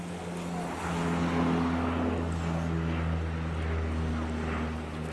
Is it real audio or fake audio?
real